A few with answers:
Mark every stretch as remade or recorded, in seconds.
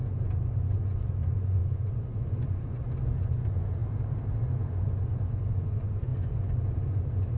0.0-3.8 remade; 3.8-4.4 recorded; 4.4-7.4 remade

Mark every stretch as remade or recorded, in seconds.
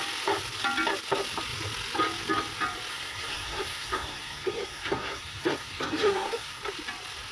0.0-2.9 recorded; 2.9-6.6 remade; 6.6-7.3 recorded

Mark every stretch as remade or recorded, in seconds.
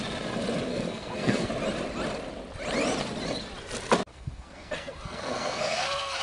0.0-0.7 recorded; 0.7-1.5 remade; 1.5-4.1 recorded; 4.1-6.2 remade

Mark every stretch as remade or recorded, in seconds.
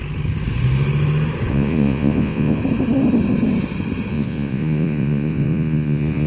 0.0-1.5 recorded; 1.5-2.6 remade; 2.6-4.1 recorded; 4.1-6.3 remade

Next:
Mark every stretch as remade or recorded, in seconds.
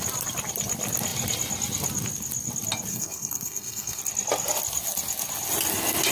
0.0-2.9 recorded; 2.9-4.0 remade; 4.0-6.1 recorded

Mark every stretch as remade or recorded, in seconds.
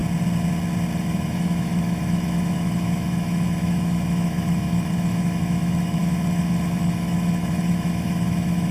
0.0-1.1 recorded; 1.1-8.7 remade